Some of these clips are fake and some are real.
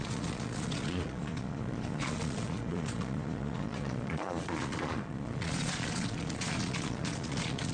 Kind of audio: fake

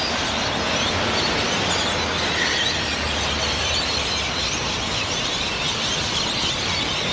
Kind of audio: real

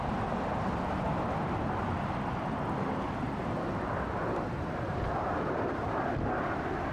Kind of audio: real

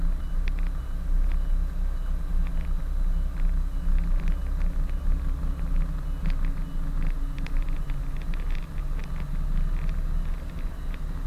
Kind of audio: real